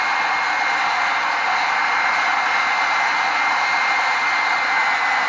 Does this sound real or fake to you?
real